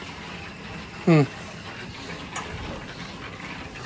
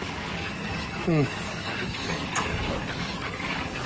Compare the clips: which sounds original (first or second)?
first